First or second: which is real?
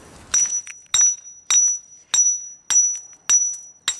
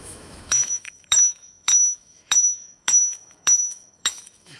first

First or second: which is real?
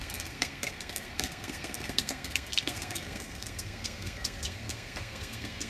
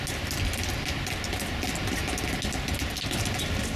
second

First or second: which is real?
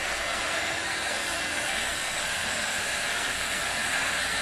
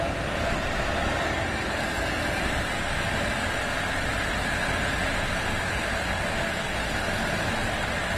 second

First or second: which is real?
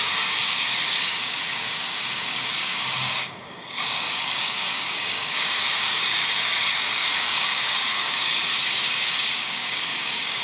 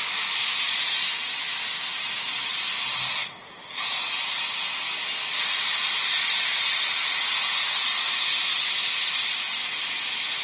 second